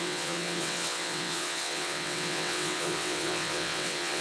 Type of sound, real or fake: fake